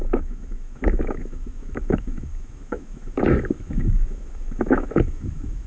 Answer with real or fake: fake